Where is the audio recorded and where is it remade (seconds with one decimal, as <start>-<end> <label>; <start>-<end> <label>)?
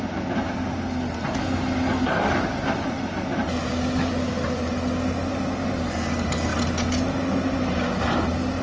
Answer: 0.0-8.6 recorded